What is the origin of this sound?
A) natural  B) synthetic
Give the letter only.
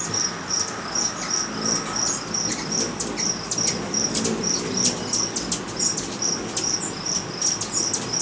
A